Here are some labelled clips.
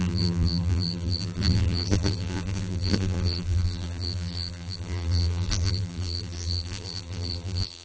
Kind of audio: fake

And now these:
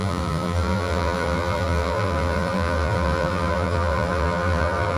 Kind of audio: fake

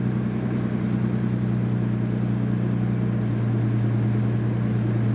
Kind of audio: real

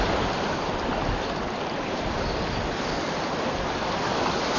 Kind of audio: real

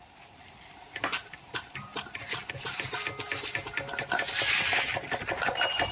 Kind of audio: real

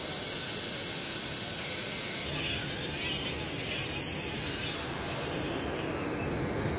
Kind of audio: real